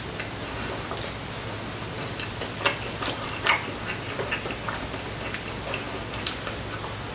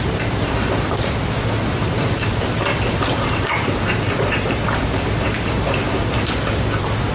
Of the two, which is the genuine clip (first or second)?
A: first